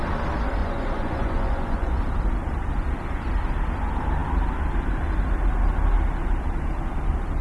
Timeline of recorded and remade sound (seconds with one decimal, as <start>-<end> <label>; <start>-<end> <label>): 0.0-0.6 recorded; 0.6-2.0 remade; 2.0-7.4 recorded